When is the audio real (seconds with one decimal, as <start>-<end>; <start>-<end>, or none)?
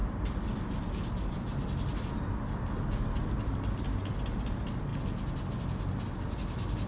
0.0-6.9